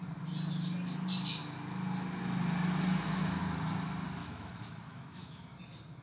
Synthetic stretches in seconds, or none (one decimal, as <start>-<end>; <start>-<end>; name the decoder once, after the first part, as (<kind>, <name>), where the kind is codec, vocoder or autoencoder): 4.2-5.5 (autoencoder, DAC-VAE)